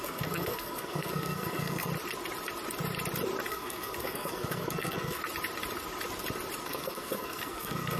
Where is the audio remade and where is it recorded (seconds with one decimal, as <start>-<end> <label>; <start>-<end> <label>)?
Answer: 0.0-1.9 remade; 1.9-3.5 recorded; 3.5-5.2 remade; 5.2-6.6 recorded; 6.6-8.0 remade